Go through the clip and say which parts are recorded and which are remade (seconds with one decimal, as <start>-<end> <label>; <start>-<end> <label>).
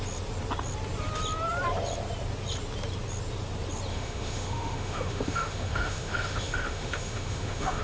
0.0-3.9 recorded; 3.9-7.8 remade